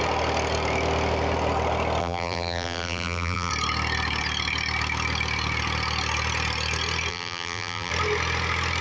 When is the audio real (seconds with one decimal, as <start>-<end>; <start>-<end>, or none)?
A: 0.0-2.0; 3.5-7.1; 7.9-8.8